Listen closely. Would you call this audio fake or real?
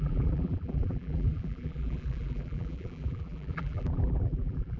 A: fake